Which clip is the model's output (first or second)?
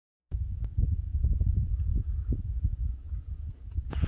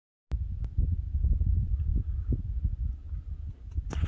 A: first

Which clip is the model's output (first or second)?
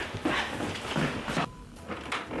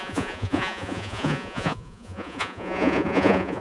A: second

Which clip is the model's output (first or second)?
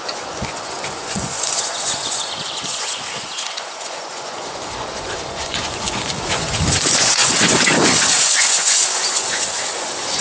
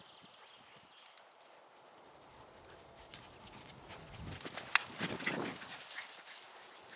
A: first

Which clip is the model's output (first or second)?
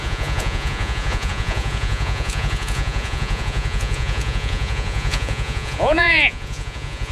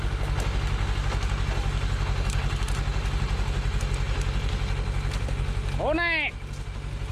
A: first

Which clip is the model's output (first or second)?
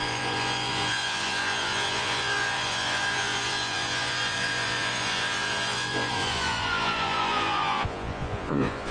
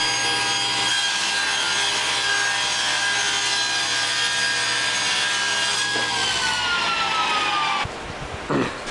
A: first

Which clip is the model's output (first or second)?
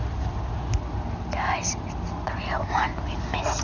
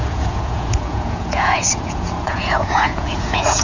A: second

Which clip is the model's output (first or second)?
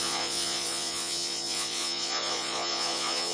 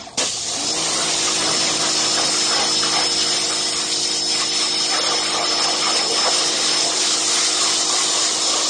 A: first